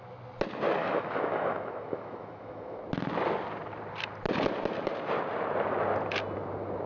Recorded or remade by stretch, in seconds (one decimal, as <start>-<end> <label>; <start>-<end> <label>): 0.0-0.8 recorded; 0.8-2.8 remade; 2.8-6.9 recorded